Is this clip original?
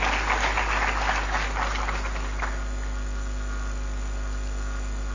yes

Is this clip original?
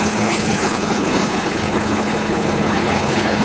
no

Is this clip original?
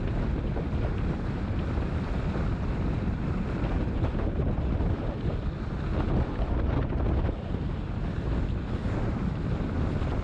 yes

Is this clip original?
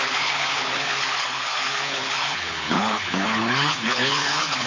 no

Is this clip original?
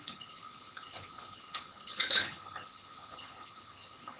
no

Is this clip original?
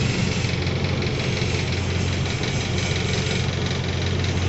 yes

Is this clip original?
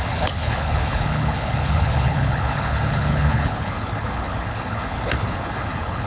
no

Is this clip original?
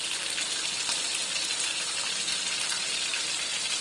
yes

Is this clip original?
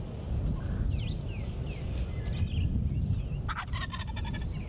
yes